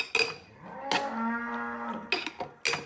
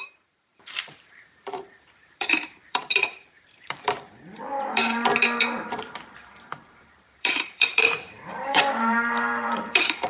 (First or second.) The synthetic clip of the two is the second